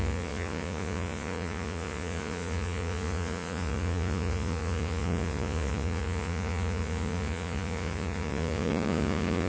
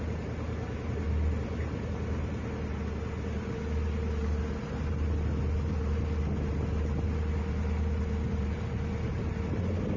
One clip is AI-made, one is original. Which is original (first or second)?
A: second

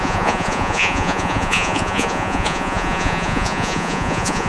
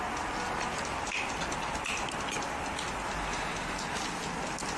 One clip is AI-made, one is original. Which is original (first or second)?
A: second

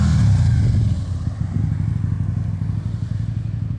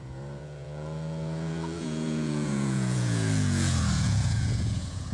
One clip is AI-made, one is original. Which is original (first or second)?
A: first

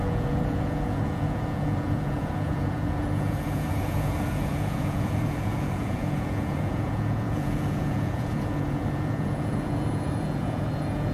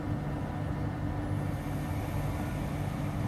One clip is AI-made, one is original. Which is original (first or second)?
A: second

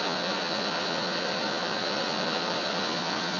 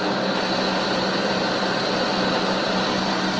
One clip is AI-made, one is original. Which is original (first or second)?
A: second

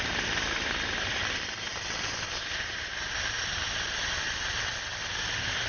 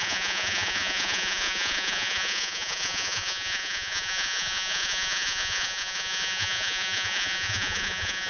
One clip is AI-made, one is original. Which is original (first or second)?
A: first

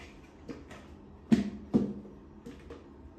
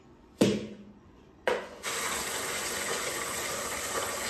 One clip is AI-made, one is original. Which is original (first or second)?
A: first